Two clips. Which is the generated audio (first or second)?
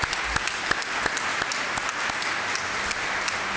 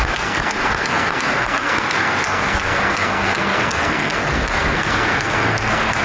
second